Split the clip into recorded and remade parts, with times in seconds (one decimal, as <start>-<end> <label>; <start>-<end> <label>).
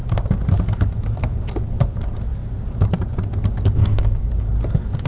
0.0-3.8 recorded; 3.8-4.3 remade; 4.3-5.1 recorded